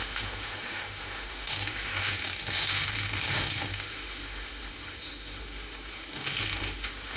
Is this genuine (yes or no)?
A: no